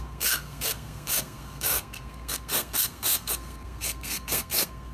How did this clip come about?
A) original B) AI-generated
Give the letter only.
B